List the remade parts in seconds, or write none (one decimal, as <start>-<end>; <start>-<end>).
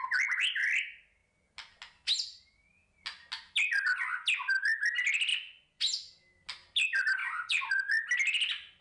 5.3-5.8; 7.2-7.7